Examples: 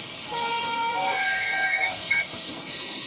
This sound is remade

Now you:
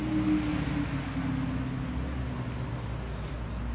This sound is recorded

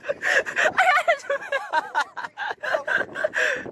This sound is remade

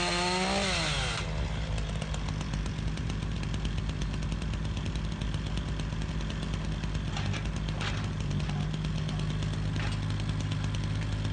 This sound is recorded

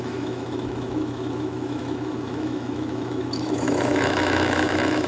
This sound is remade